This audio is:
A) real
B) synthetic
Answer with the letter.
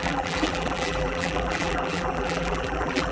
B